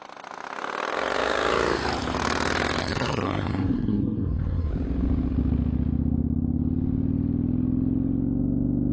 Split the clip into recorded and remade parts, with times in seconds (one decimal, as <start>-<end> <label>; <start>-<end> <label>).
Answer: 0.0-2.8 recorded; 2.8-4.7 remade; 4.7-8.9 recorded